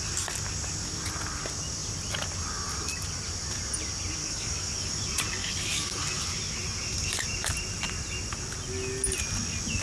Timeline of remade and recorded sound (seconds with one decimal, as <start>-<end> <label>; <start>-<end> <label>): 0.0-4.2 recorded; 4.2-5.0 remade; 5.0-5.4 recorded; 5.4-6.0 remade; 6.0-9.8 recorded